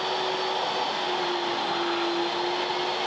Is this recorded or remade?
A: recorded